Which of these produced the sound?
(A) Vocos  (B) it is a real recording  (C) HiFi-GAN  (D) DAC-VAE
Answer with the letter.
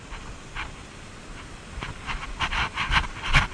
B